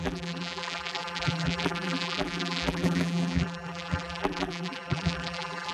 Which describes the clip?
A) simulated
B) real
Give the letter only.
A